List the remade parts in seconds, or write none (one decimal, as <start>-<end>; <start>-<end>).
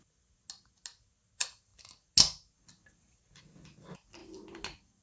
none